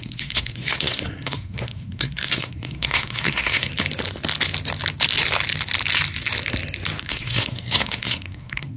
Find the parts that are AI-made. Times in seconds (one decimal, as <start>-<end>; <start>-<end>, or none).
0.0-3.7; 7.0-8.8